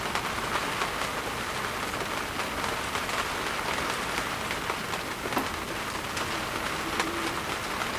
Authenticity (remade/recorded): recorded